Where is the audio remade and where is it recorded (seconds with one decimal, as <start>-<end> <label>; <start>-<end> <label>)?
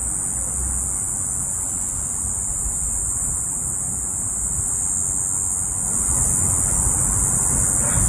0.0-8.1 recorded